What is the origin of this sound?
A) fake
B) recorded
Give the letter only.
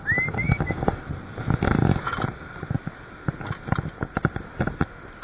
B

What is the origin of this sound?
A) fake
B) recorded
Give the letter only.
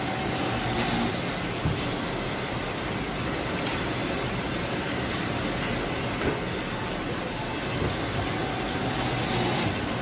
B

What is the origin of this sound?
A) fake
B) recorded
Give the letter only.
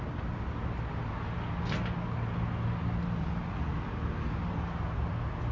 B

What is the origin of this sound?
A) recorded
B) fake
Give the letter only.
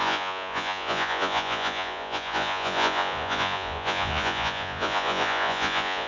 B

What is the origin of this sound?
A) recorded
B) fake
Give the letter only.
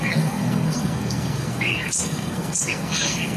B